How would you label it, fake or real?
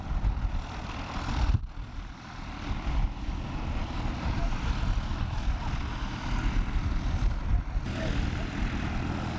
real